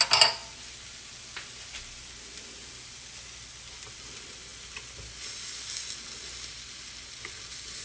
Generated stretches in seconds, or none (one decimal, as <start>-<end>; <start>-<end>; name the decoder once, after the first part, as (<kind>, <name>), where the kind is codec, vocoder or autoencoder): none